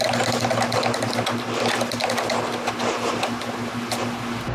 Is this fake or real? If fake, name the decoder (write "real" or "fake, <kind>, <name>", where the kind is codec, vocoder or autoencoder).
real